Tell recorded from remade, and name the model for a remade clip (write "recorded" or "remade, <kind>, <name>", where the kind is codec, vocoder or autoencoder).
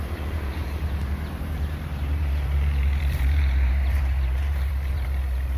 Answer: remade, vocoder, BigVGAN v2